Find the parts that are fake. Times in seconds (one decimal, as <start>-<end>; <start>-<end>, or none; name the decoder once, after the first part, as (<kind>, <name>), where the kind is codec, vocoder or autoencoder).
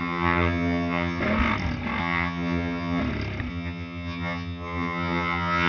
0.0-1.2 (vocoder, HiFi-GAN); 2.0-3.0; 3.5-5.7